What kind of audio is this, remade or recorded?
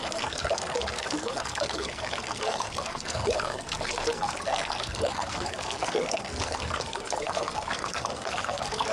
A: remade